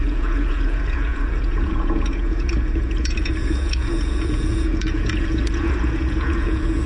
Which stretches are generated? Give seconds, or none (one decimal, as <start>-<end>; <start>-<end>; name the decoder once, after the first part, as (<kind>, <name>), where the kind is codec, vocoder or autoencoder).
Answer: 0.0-6.9 (vocoder, Vocos)